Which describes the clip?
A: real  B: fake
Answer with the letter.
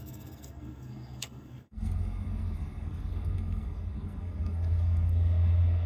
B